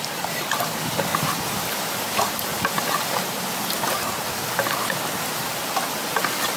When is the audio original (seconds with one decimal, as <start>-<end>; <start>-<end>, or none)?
0.0-6.6